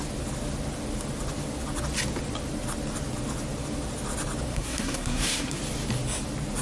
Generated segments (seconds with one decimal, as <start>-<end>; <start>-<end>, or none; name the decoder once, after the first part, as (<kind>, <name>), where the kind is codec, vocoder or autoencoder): 4.5-5.6 (codec, SNAC)